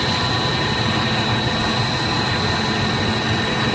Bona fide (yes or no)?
yes